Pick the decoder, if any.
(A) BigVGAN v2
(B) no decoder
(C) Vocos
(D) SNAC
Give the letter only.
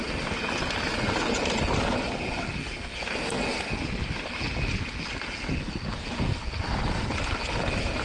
B